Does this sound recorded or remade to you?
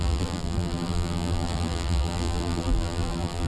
remade